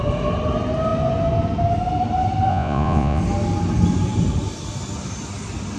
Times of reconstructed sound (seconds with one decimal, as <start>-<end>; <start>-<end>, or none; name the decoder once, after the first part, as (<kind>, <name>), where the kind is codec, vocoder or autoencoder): 2.5-3.2 (vocoder, Vocos)